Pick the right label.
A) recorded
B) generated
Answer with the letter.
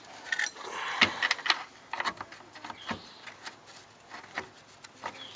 A